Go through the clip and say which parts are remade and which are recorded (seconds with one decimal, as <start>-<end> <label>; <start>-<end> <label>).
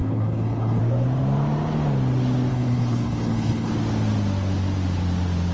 0.0-0.8 remade; 0.8-2.5 recorded; 2.5-3.7 remade; 3.7-5.5 recorded